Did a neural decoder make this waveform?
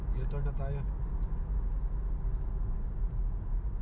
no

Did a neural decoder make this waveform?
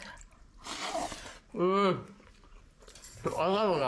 yes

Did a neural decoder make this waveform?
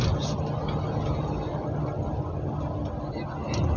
no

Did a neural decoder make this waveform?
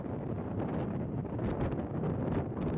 no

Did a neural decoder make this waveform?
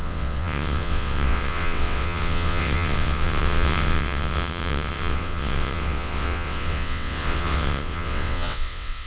yes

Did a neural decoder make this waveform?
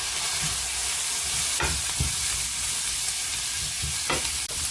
no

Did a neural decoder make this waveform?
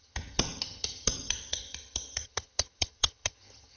yes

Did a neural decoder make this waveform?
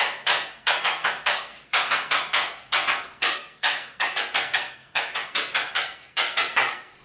yes